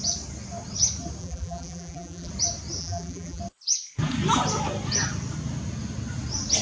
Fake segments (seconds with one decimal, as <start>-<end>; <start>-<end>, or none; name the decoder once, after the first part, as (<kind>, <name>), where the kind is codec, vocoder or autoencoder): 1.2-2.3 (vocoder, BigVGAN v2); 2.8-3.4